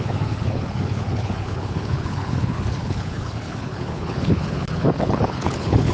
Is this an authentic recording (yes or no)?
no